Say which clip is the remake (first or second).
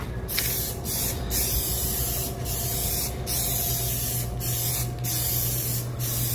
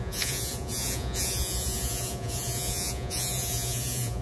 second